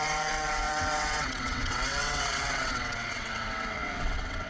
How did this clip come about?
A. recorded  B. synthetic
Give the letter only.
B